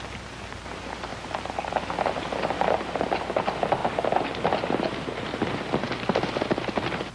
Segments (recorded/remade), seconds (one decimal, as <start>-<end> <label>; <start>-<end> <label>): 0.0-7.1 recorded